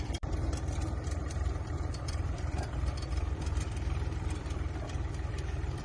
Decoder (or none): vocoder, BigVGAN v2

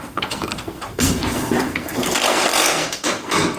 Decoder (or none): codec, SNAC